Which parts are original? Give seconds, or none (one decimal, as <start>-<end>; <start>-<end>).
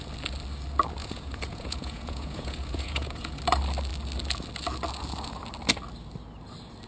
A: 0.0-1.0; 3.4-6.9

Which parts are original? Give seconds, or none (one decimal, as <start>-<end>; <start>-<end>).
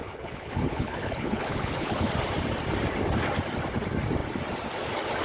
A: 2.1-5.2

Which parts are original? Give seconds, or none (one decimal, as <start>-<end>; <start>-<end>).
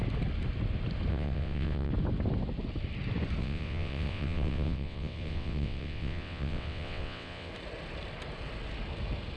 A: 0.0-1.1; 1.9-3.4; 7.5-9.4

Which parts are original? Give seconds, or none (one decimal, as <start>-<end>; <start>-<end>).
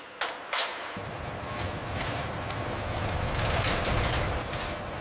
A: 0.0-5.0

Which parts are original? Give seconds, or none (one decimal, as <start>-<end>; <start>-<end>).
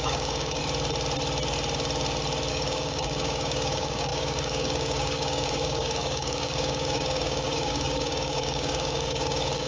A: 0.6-2.5